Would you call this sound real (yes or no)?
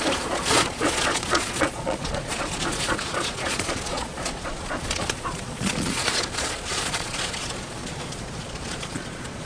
no